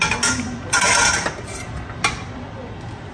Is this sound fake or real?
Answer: real